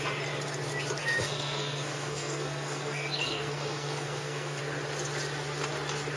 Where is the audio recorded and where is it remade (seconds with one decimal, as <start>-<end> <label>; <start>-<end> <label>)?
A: 0.0-1.0 recorded; 1.0-4.6 remade; 4.6-6.2 recorded